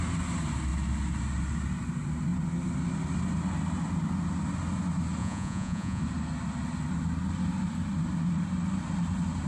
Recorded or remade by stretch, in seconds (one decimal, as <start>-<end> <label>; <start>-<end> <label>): 0.0-5.2 recorded; 5.2-6.0 remade; 6.0-9.5 recorded